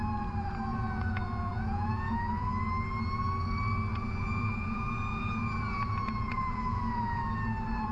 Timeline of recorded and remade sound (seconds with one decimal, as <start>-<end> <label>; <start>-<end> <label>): 0.0-0.7 recorded; 0.7-2.6 remade; 2.6-3.9 recorded; 3.9-7.2 remade; 7.2-7.9 recorded